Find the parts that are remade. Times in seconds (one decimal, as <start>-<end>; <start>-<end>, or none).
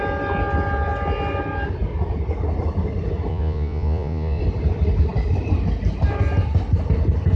3.3-4.4